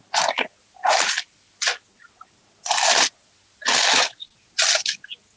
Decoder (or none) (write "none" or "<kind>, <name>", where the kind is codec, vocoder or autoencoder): none